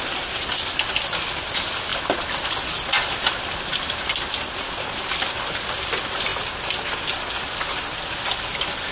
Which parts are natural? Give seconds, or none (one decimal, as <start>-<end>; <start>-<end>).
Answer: 0.0-8.9